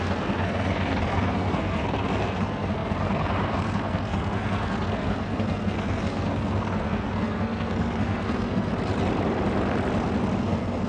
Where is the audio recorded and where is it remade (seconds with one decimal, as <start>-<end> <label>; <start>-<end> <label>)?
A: 0.0-8.7 remade; 8.7-10.4 recorded; 10.4-10.9 remade